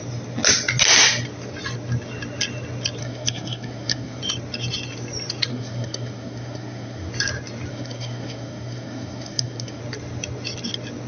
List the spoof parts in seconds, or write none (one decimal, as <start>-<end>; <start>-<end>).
3.0-4.2; 5.5-7.1; 7.7-9.8